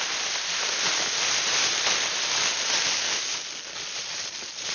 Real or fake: real